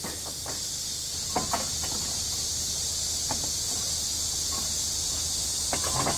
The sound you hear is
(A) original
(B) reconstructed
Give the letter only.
A